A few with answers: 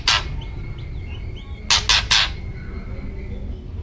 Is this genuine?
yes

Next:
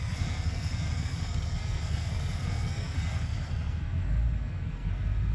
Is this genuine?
no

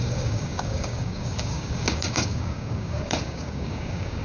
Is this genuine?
no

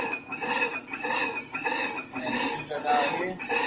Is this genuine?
yes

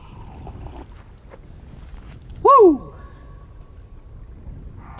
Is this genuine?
yes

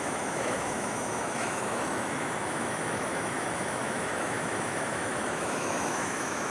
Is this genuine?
no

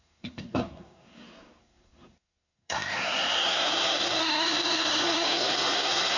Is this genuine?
no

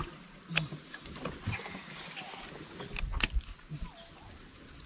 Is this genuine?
yes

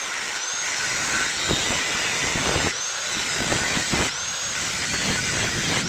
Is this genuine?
yes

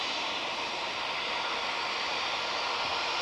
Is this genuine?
yes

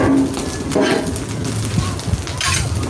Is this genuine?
yes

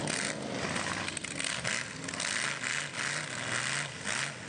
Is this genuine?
yes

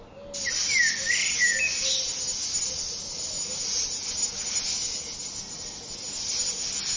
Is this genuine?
yes